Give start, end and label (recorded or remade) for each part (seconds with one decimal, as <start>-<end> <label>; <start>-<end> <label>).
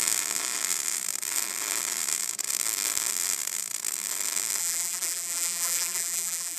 0.0-4.6 recorded; 4.6-6.6 remade